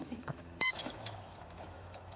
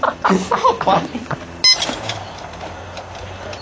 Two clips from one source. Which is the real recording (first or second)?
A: second